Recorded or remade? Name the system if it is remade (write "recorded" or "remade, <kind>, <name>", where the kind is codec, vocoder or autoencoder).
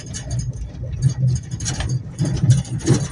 recorded